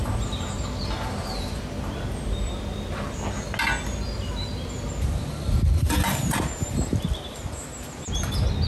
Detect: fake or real real